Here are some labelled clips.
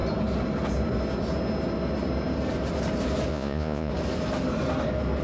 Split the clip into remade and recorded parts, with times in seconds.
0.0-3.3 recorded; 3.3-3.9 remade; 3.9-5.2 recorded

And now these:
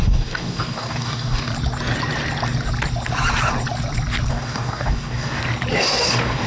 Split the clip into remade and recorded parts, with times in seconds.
0.0-1.5 remade; 1.5-4.3 recorded; 4.3-5.4 remade; 5.4-5.9 recorded; 5.9-6.5 remade

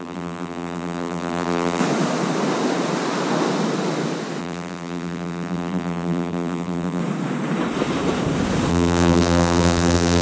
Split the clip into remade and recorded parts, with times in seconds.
0.0-1.8 remade; 1.8-4.4 recorded; 4.4-7.0 remade; 7.0-8.7 recorded; 8.7-10.2 remade

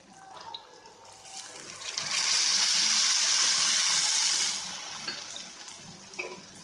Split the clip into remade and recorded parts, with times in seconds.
0.0-6.6 recorded

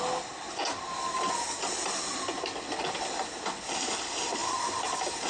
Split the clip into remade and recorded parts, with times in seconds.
0.0-5.3 recorded